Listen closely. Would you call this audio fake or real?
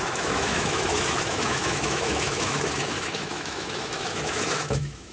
fake